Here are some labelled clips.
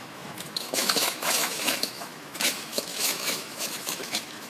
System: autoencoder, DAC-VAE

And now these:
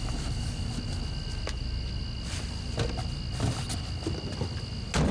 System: none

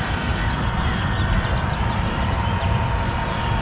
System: vocoder, BigVGAN v2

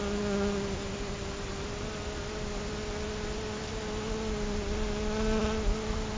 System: none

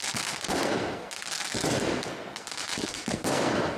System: codec, SNAC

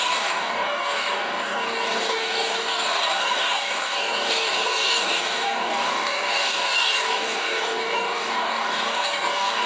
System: codec, DAC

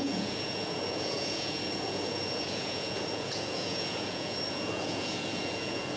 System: vocoder, Vocos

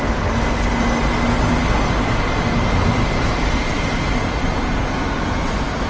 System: none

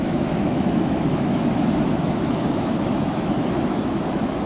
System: autoencoder, DAC-VAE